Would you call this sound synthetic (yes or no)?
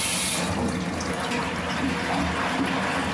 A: no